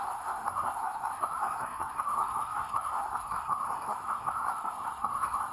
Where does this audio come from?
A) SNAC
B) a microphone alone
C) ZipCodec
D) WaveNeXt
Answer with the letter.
A